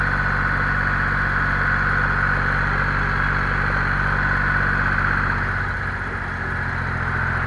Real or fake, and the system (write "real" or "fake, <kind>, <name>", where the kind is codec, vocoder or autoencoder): real